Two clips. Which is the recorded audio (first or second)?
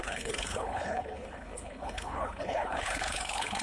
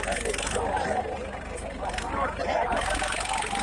second